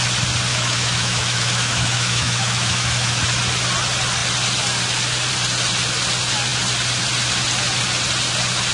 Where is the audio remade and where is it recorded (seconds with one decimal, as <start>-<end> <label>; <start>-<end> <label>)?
0.0-0.5 recorded; 0.5-3.2 remade; 3.2-8.7 recorded